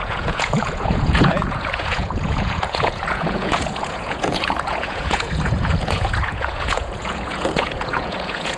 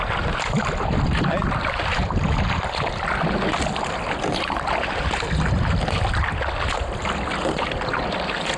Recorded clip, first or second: second